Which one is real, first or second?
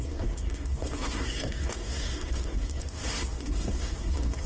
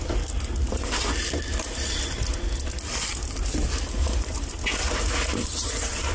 second